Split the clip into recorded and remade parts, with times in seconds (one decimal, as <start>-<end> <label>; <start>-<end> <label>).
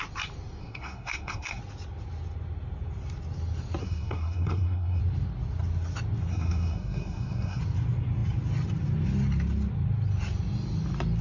0.0-0.6 recorded; 0.6-1.6 remade; 1.6-3.8 recorded; 3.8-5.0 remade; 5.0-6.3 recorded; 6.3-7.6 remade; 7.6-11.2 recorded